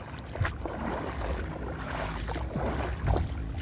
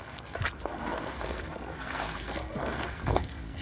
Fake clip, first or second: second